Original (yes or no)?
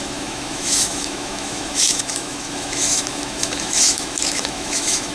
no